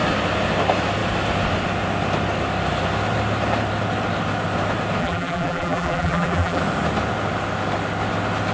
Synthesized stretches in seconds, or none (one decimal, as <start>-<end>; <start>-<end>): 5.0-6.6

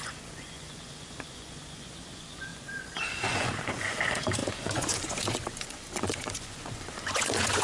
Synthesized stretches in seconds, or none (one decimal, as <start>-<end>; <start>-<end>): 0.0-7.6

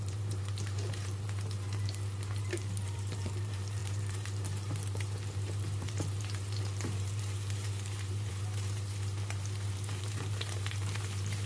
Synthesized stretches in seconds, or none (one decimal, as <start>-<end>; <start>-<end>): 0.0-11.5

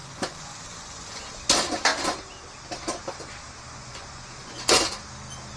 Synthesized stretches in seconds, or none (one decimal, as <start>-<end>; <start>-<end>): 0.0-1.3; 3.7-4.8